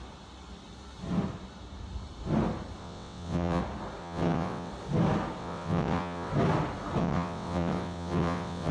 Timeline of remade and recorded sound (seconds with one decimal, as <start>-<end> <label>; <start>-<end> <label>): 0.0-2.8 recorded; 2.8-3.6 remade; 3.6-4.0 recorded; 4.0-4.7 remade; 4.7-5.4 recorded; 5.4-6.3 remade; 6.3-7.0 recorded; 7.0-8.7 remade